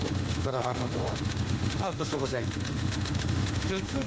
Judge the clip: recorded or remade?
remade